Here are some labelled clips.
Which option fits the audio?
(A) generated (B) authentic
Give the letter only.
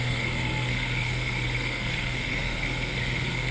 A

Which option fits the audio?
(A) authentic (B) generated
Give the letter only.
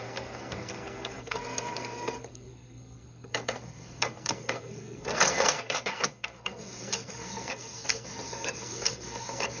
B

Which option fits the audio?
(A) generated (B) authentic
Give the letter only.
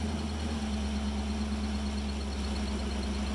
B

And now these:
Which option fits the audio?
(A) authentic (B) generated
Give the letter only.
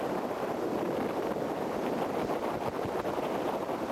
A